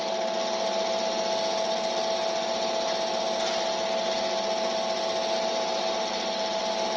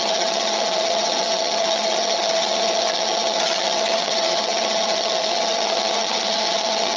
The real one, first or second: first